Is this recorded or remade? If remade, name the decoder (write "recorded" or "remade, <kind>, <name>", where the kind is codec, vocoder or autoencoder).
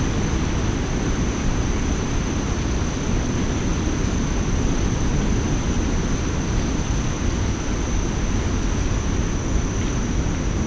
recorded